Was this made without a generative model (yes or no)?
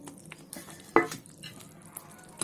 yes